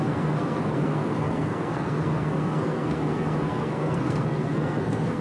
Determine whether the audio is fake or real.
fake